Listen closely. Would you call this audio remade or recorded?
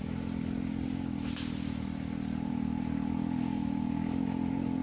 recorded